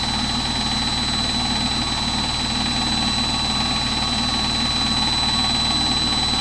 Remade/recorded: recorded